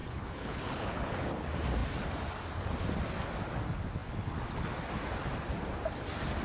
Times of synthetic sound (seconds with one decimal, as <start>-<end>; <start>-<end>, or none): 0.0-1.3